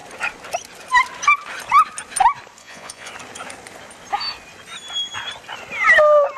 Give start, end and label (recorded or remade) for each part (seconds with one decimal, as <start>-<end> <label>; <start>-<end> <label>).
0.0-2.6 recorded; 2.6-3.1 remade; 3.1-6.4 recorded

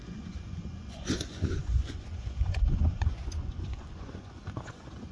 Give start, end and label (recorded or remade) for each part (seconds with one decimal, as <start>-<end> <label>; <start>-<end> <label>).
0.0-5.1 remade

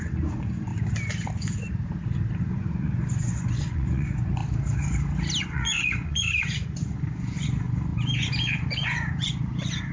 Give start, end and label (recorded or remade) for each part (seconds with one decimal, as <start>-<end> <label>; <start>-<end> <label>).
0.0-0.7 remade; 0.7-2.4 recorded; 2.4-4.4 remade; 4.4-5.4 recorded; 5.4-9.9 remade

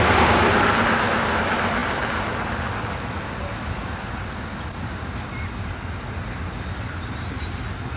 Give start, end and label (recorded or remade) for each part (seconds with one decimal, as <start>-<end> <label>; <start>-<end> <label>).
0.0-8.0 recorded

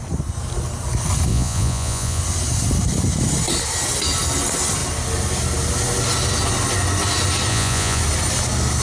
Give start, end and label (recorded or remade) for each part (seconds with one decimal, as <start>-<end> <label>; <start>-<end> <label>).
0.0-1.3 recorded; 1.3-2.2 remade; 2.2-7.5 recorded; 7.5-8.0 remade; 8.0-8.8 recorded